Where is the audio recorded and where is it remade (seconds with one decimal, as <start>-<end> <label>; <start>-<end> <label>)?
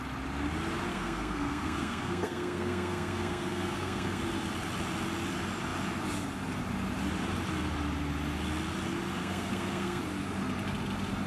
0.0-0.9 recorded; 0.9-4.2 remade; 4.2-9.2 recorded; 9.2-10.0 remade; 10.0-11.3 recorded